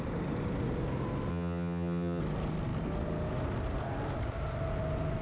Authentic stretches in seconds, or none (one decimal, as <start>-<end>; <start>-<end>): 0.0-1.3; 2.2-5.2